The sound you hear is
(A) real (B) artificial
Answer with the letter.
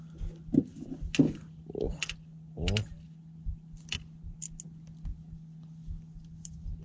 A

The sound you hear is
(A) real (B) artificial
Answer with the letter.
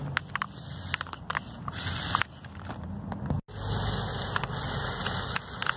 A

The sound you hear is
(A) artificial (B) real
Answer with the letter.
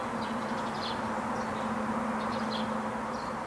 B